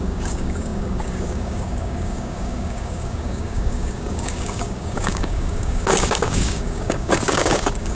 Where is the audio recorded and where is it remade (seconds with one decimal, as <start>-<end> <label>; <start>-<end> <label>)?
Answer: 0.0-7.9 remade

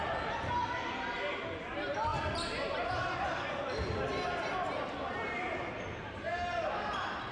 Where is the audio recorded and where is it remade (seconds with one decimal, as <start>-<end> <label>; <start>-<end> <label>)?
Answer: 0.0-7.3 recorded

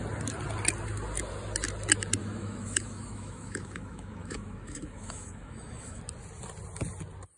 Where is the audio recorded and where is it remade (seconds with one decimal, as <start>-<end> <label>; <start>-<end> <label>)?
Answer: 0.0-2.2 recorded; 2.2-6.0 remade; 6.0-7.4 recorded

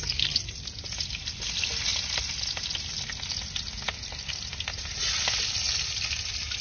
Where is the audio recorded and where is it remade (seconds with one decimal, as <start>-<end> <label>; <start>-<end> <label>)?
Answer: 0.0-6.6 recorded

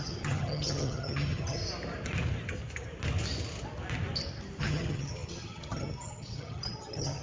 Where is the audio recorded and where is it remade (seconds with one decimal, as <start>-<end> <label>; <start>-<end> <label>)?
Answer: 0.0-1.6 remade; 1.6-4.6 recorded; 4.6-7.2 remade

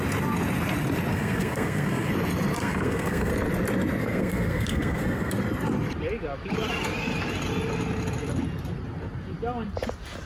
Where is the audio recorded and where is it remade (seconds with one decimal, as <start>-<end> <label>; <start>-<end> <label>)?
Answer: 0.0-1.1 recorded; 1.1-2.1 remade; 2.1-2.6 recorded; 2.6-3.3 remade; 3.3-4.0 recorded; 4.0-5.3 remade; 5.3-10.3 recorded